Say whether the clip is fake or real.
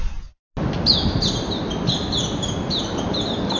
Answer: real